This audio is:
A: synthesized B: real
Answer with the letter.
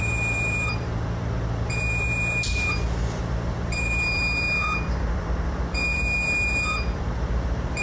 A